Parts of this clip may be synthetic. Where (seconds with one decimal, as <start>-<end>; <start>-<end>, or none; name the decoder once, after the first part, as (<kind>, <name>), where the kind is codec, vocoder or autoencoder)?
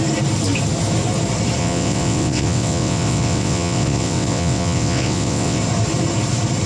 1.6-5.6 (vocoder, WaveNeXt)